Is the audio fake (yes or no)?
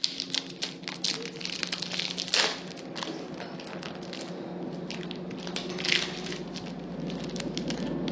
no